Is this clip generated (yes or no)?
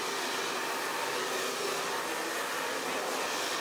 no